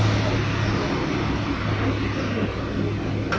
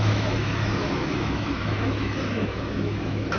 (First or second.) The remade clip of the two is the second